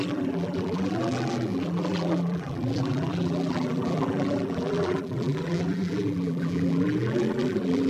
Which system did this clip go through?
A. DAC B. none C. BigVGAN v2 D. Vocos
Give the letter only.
C